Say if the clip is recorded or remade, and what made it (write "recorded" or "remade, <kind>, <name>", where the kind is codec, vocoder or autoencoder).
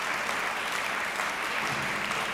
remade, vocoder, BigVGAN v2